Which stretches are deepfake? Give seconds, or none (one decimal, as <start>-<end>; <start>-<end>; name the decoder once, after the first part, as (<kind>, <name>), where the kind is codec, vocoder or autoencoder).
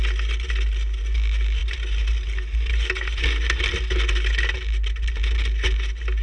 none